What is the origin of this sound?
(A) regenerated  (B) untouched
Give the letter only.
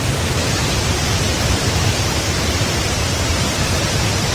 A